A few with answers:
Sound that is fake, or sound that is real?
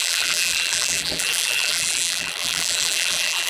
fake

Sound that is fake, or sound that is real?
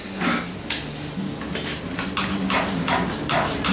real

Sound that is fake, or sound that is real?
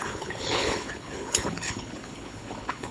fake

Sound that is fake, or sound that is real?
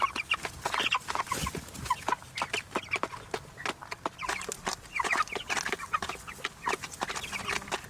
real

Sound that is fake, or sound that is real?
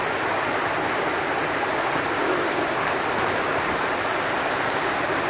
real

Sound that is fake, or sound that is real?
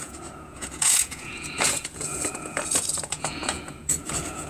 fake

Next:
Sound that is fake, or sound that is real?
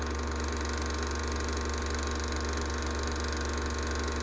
real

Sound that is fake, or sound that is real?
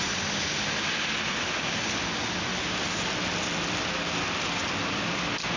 real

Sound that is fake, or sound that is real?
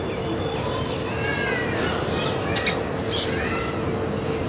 real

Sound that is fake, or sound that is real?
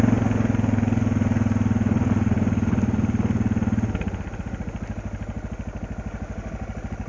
real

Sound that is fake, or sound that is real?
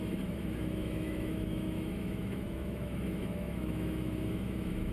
fake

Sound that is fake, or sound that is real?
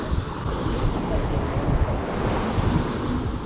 real